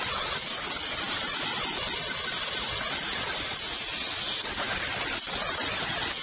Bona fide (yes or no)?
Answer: yes